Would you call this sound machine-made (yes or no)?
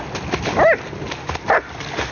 no